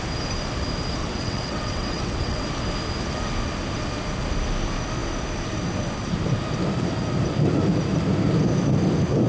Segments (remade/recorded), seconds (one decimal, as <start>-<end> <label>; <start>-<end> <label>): 0.0-1.0 recorded; 1.0-2.4 remade; 2.4-9.3 recorded